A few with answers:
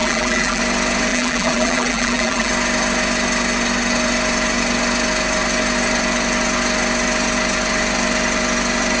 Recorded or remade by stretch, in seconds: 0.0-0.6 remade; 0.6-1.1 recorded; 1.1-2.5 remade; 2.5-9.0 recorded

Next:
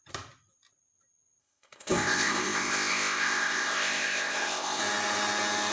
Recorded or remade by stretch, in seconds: 0.0-1.4 recorded; 1.4-4.8 remade; 4.8-5.7 recorded

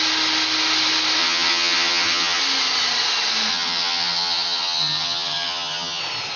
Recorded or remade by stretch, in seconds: 0.0-1.2 recorded; 1.2-2.4 remade; 2.4-3.5 recorded; 3.5-6.0 remade; 6.0-6.4 recorded

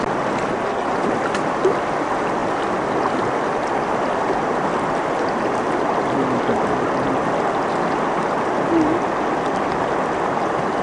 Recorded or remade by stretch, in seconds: 0.0-10.8 recorded

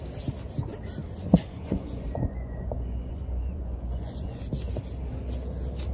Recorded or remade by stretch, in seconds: 0.0-1.2 recorded; 1.2-4.4 remade; 4.4-5.9 recorded

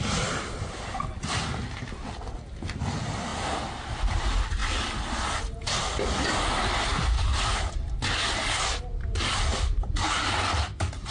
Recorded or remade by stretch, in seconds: 0.0-11.1 recorded